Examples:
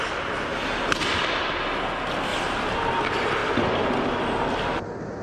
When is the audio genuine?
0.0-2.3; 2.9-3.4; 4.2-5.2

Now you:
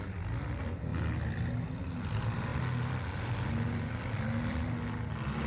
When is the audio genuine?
0.0-5.5

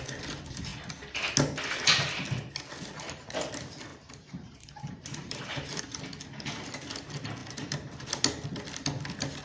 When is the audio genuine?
0.0-3.9; 5.8-7.4; 8.0-9.4